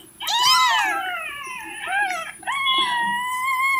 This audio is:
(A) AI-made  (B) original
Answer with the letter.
B